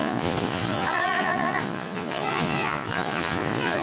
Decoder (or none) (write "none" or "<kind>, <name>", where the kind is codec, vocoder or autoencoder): vocoder, Vocos